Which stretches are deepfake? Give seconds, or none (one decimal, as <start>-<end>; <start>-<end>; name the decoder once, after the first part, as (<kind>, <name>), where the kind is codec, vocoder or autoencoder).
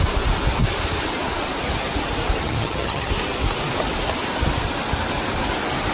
2.4-3.1 (vocoder, HiFi-GAN)